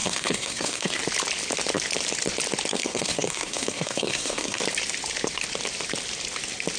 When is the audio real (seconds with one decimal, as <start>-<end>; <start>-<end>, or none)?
1.0-2.7; 4.6-6.8